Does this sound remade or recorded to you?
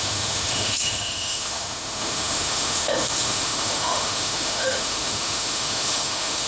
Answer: remade